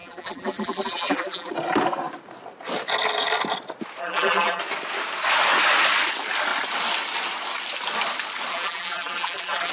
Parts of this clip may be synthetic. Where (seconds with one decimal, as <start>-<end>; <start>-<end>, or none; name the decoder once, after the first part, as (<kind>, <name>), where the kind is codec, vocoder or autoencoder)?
0.0-1.5 (vocoder, BigVGAN v2); 4.0-4.6; 8.5-9.7